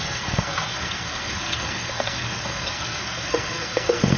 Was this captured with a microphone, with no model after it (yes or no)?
no